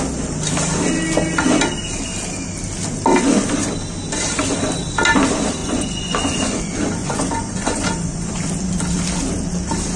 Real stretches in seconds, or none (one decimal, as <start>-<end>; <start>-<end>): 0.0-5.6; 6.6-7.0; 8.4-10.0